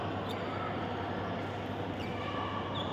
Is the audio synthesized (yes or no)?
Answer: no